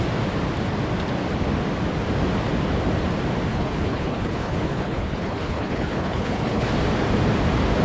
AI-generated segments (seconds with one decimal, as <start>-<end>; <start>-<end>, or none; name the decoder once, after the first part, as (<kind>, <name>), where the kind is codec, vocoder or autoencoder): 3.5-6.7 (codec, HILCodec)